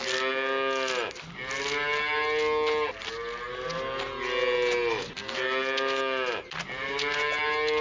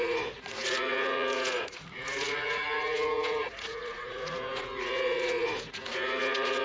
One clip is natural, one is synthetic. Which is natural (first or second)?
first